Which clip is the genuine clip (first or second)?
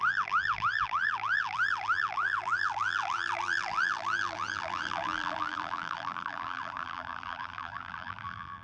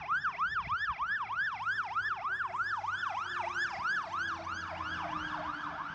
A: second